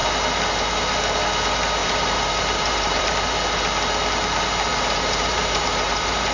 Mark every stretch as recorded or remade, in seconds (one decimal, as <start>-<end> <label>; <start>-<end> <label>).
0.0-1.8 recorded; 1.8-3.1 remade; 3.1-4.7 recorded; 4.7-6.3 remade